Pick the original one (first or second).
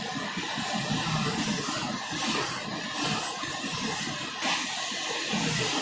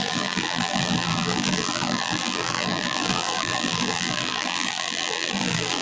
first